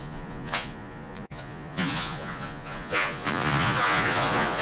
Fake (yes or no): yes